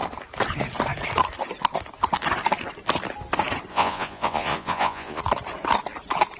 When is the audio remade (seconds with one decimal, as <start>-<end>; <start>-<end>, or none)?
3.7-5.2